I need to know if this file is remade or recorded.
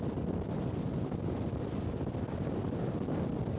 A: recorded